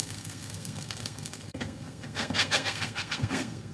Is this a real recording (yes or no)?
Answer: no